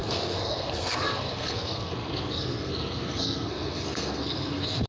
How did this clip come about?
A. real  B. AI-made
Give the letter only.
B